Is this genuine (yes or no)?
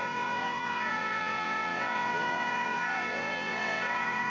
no